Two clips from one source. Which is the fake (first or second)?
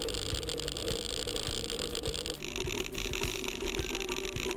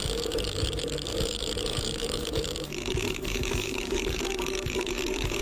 second